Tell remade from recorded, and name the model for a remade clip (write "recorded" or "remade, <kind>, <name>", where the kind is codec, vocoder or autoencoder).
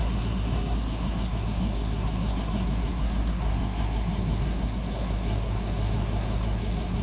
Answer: remade, codec, SNAC